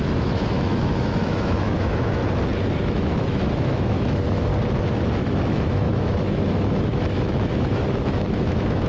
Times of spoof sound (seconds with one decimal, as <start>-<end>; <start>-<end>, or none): 0.0-2.2; 2.9-4.5; 5.2-8.9